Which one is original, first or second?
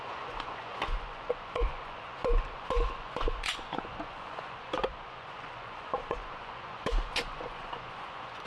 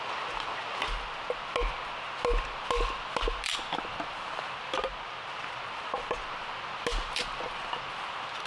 second